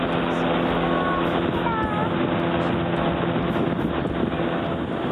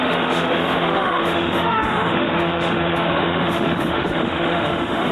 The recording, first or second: first